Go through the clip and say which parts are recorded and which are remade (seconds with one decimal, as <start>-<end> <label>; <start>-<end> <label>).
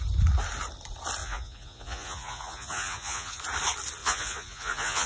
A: 0.0-1.2 recorded; 1.2-3.4 remade; 3.4-4.0 recorded; 4.0-5.1 remade